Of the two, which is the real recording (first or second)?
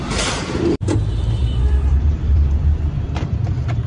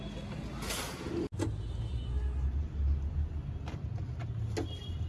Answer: second